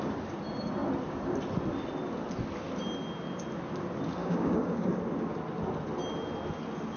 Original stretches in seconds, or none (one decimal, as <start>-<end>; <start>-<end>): 0.0-4.2; 4.9-7.0